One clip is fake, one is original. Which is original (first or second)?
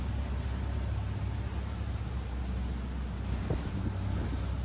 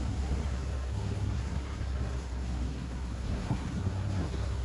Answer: first